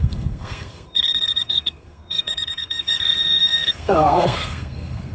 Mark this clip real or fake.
fake